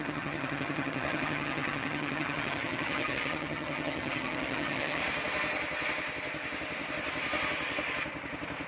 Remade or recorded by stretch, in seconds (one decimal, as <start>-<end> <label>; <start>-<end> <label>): 0.0-5.0 remade; 5.0-8.7 recorded